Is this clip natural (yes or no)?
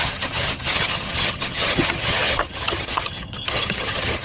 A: no